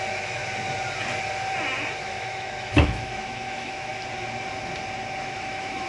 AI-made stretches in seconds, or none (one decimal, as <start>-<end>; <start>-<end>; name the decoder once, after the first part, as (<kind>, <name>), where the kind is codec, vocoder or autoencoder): 0.0-0.4 (autoencoder, DAC-VAE); 2.0-3.9; 5.2-5.9